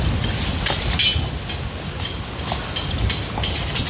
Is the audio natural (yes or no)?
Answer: yes